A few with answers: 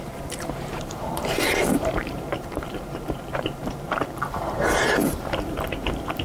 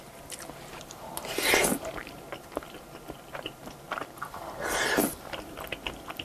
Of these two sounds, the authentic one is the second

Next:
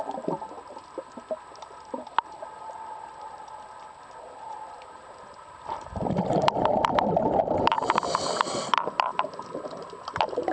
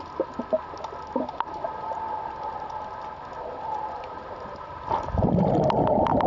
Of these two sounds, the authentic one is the second